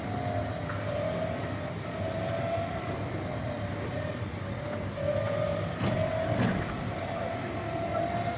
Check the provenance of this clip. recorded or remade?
recorded